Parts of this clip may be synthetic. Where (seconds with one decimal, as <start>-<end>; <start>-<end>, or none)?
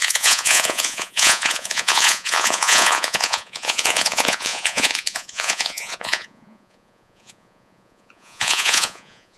0.0-9.4